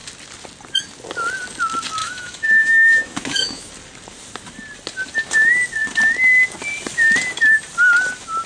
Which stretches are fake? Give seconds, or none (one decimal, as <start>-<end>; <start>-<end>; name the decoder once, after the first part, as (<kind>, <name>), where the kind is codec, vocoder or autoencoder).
2.0-3.7 (autoencoder, DAC-VAE)

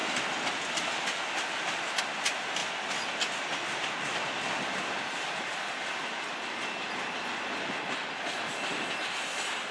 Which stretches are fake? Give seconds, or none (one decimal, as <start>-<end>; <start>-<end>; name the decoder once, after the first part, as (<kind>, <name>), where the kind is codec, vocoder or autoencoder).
none

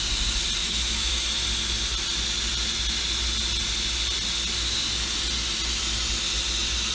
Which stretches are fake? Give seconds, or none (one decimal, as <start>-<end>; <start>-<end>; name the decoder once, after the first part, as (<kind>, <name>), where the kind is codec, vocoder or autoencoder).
0.6-1.1 (autoencoder, DAC-VAE)

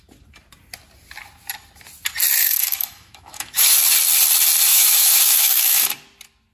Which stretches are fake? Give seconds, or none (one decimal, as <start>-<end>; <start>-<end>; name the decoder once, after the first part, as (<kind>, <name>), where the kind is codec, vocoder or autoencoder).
2.4-3.8 (autoencoder, DAC-VAE); 4.7-5.9

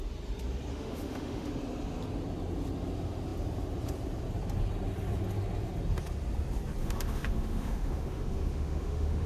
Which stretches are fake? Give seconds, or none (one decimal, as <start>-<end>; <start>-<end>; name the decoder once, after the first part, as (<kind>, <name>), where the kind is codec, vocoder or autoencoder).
0.7-1.5 (autoencoder, DAC-VAE); 6.8-9.3

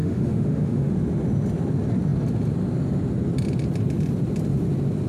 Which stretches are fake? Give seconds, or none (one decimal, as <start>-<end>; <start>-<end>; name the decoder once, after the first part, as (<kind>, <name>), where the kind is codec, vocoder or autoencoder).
0.0-0.9 (autoencoder, DAC-VAE)